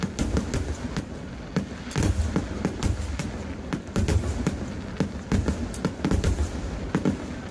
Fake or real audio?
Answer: real